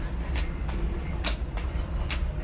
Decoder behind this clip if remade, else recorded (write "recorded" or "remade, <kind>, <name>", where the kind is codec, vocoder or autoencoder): recorded